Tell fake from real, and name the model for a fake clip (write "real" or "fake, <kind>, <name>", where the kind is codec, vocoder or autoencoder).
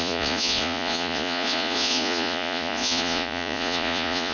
fake, vocoder, Vocos